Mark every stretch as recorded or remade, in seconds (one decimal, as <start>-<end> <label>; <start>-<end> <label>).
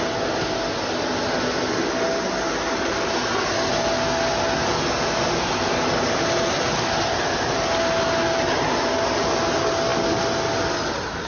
0.0-11.3 recorded